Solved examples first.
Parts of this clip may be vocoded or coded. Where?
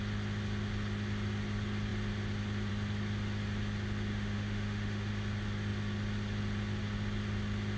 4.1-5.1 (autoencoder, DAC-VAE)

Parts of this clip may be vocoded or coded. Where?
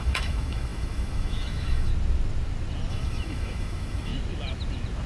0.0-1.9 (autoencoder, DAC-VAE); 2.9-4.1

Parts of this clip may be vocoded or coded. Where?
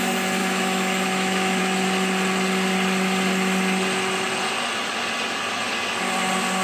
0.4-1.6 (autoencoder, DAC-VAE)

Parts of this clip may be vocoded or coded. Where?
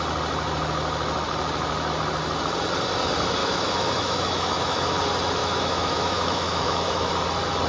3.4-5.0 (autoencoder, DAC-VAE); 5.4-7.1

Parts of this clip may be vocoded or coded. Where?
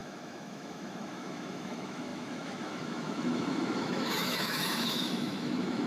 0.0-5.9 (autoencoder, DAC-VAE)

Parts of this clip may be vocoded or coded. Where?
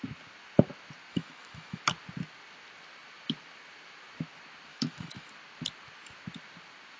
1.1-1.8 (autoencoder, DAC-VAE); 4.7-5.3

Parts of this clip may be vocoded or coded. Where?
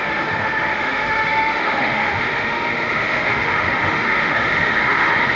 0.0-5.4 (autoencoder, DAC-VAE)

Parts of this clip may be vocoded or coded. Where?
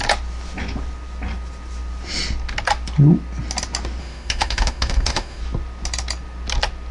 4.0-5.4 (autoencoder, DAC-VAE)